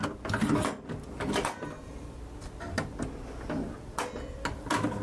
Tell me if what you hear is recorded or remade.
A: recorded